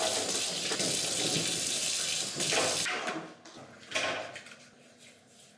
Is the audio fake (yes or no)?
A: no